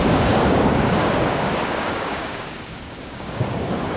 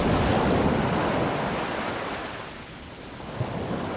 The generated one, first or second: first